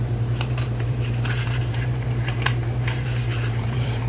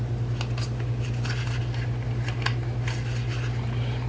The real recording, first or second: second